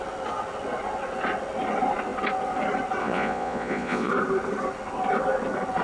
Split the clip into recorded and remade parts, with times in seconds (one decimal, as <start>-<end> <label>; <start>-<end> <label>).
0.0-3.0 recorded; 3.0-4.1 remade; 4.1-5.8 recorded